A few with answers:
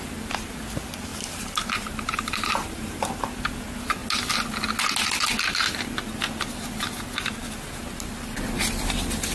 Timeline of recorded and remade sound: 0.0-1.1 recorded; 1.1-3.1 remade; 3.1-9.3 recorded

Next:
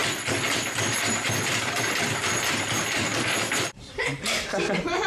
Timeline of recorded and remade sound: 0.0-0.9 recorded; 0.9-2.2 remade; 2.2-2.8 recorded; 2.8-5.1 remade

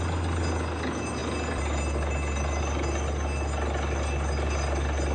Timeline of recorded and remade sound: 0.0-5.1 recorded

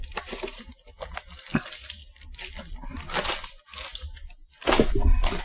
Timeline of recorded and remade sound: 0.0-1.1 remade; 1.1-5.4 recorded